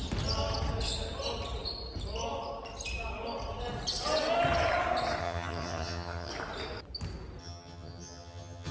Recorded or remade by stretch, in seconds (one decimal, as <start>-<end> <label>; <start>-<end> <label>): 0.0-5.2 recorded; 5.2-6.3 remade; 6.3-7.4 recorded; 7.4-8.7 remade